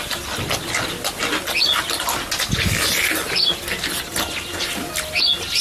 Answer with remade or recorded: recorded